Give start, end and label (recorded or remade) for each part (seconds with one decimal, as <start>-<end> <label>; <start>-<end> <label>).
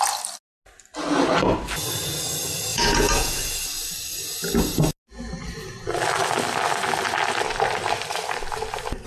0.0-2.7 recorded; 2.7-3.4 remade; 3.4-9.1 recorded